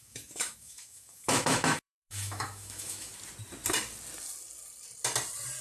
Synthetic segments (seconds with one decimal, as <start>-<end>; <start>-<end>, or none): 0.0-3.1